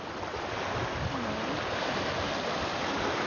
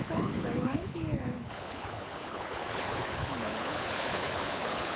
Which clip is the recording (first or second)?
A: first